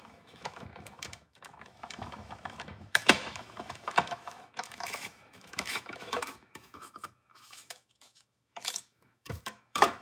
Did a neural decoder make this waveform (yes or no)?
yes